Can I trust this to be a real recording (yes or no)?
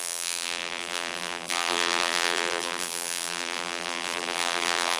no